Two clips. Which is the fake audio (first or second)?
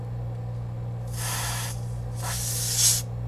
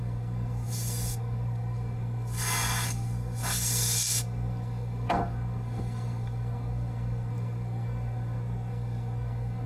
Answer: second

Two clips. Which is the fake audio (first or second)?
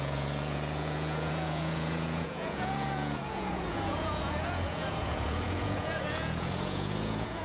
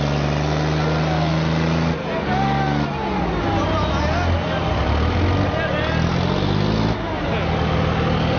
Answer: first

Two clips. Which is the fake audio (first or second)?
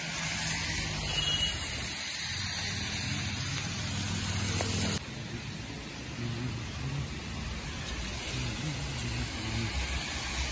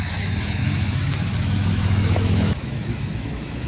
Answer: second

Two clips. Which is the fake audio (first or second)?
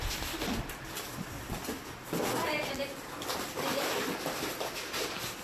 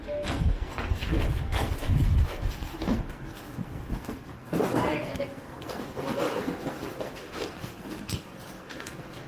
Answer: second